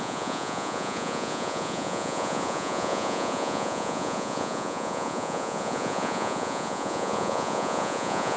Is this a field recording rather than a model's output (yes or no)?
no